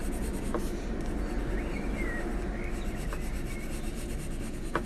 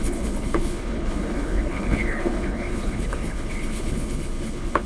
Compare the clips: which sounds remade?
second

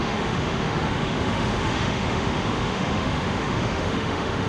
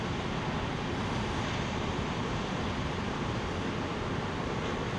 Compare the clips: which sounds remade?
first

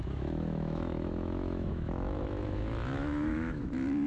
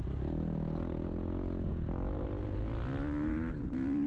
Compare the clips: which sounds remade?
first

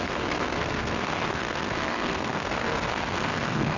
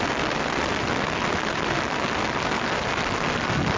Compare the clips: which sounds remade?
first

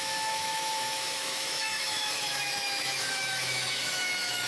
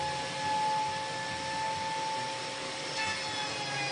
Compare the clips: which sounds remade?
first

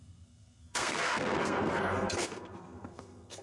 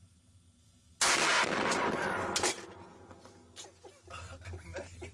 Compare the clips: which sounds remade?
first